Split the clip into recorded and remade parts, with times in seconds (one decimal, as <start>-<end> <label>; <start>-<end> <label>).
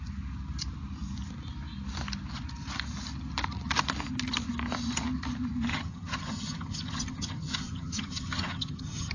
0.0-5.7 recorded; 5.7-9.1 remade